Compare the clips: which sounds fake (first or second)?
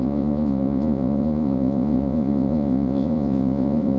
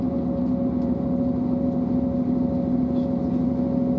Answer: first